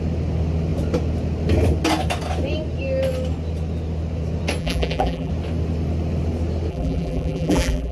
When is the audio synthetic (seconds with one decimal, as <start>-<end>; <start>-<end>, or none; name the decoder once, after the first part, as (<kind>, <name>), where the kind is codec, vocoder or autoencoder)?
4.6-5.3 (vocoder, BigVGAN v2); 6.7-7.9

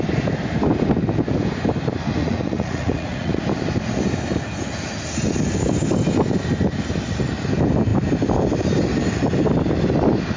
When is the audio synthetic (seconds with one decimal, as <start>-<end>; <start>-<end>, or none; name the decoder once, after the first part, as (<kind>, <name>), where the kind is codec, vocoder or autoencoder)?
2.2-3.4 (vocoder, Vocos)

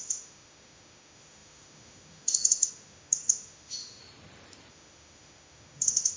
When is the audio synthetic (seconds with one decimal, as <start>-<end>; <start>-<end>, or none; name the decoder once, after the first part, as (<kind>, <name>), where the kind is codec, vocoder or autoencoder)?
0.0-4.0 (autoencoder, DAC-VAE); 4.7-6.2

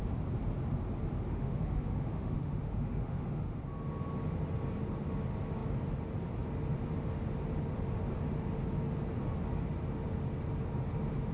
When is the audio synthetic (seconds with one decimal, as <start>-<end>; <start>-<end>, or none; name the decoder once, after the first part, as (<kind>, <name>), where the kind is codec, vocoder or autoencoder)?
1.3-3.6 (autoencoder, DAC-VAE)

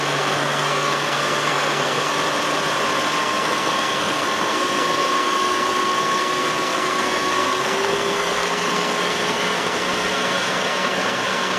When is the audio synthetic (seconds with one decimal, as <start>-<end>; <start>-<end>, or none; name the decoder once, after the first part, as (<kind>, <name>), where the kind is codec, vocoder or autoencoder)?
0.0-2.1 (codec, SNAC); 3.2-11.6

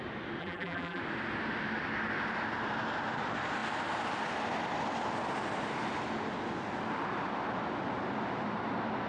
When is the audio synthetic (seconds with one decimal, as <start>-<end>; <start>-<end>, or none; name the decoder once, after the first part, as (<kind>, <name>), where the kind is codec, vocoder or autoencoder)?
0.4-1.0 (vocoder, BigVGAN v2)

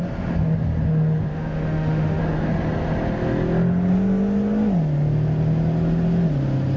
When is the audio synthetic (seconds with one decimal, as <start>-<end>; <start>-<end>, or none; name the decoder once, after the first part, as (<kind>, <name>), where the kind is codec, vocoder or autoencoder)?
1.3-2.2 (autoencoder, DAC-VAE)